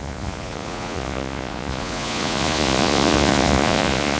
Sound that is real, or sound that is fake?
fake